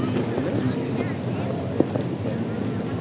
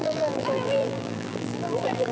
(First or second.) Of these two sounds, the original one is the first